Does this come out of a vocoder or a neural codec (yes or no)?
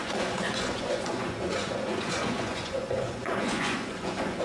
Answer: yes